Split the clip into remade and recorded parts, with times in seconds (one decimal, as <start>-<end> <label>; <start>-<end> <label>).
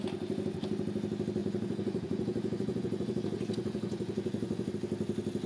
0.0-1.4 recorded; 1.4-4.7 remade; 4.7-5.5 recorded